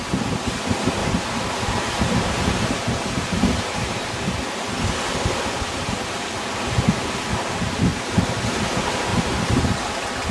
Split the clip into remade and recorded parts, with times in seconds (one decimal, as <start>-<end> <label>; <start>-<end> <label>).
0.0-1.0 recorded; 1.0-4.5 remade; 4.5-7.9 recorded; 7.9-8.5 remade; 8.5-9.1 recorded; 9.1-9.9 remade; 9.9-10.3 recorded